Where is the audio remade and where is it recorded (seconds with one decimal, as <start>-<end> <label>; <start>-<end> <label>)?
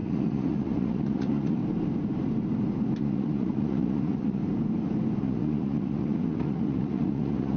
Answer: 0.0-1.6 remade; 1.6-3.0 recorded; 3.0-4.4 remade; 4.4-5.2 recorded; 5.2-7.6 remade